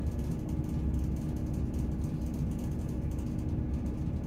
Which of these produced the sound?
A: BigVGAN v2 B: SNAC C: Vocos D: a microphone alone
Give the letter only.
D